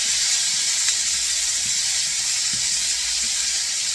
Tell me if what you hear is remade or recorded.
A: recorded